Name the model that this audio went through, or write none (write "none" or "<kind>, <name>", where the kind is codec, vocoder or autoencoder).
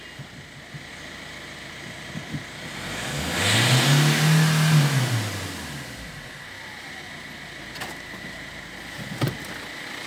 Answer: none